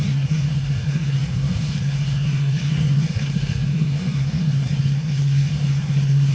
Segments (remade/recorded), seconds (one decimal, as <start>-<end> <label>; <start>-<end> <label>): 0.0-6.3 remade